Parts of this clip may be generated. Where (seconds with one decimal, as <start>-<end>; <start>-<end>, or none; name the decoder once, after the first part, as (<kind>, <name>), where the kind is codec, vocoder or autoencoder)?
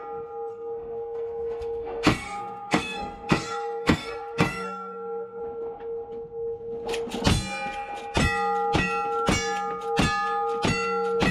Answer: 0.5-5.4 (codec, SNAC)